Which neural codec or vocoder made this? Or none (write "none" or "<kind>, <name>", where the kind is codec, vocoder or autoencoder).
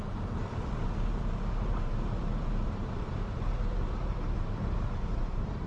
vocoder, BigVGAN v2